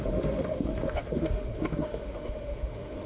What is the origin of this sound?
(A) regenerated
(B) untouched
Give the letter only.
A